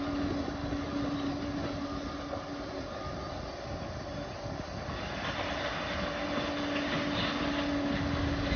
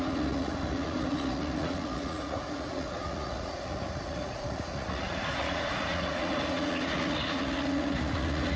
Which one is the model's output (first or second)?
second